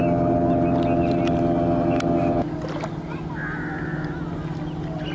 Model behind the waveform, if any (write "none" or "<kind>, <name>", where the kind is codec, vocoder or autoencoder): none